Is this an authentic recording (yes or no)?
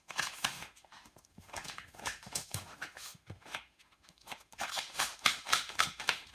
no